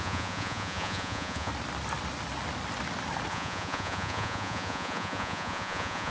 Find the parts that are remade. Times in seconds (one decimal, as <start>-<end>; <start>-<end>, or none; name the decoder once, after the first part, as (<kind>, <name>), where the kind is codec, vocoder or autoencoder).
0.0-1.5 (vocoder, Vocos); 3.3-6.1